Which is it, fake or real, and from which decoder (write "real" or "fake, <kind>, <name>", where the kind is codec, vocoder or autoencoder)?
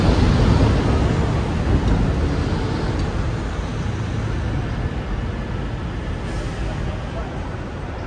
real